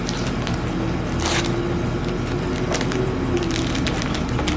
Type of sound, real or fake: real